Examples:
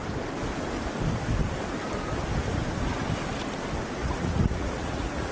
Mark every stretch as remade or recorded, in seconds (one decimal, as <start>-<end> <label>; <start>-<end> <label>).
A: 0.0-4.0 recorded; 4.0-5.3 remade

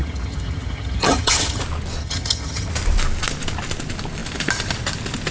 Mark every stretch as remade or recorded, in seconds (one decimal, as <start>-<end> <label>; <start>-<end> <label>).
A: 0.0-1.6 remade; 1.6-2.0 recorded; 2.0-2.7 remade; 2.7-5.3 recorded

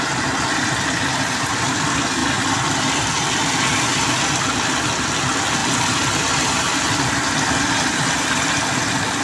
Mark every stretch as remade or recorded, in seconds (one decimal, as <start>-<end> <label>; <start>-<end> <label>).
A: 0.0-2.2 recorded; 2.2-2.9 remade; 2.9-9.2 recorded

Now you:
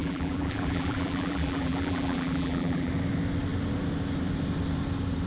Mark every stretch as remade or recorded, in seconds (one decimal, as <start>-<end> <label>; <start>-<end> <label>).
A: 0.0-2.9 remade; 2.9-5.3 recorded

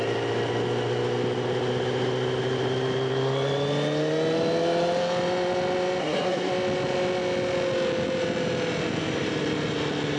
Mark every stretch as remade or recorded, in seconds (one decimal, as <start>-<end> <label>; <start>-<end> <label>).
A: 0.0-6.0 recorded; 6.0-6.5 remade; 6.5-10.2 recorded

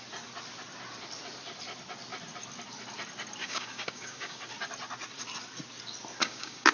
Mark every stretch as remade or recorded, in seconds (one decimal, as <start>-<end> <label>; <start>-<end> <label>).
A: 0.0-3.4 recorded; 3.4-4.4 remade; 4.4-6.2 recorded; 6.2-6.7 remade

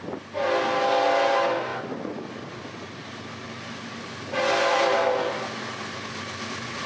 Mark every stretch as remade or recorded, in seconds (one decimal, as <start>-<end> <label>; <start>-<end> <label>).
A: 0.0-6.9 recorded